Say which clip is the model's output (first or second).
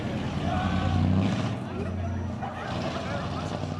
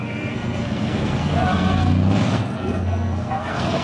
second